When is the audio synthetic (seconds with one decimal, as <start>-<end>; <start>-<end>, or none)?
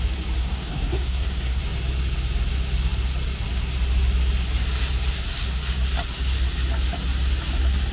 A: 0.4-1.6